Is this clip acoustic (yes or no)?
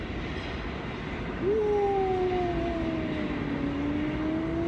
yes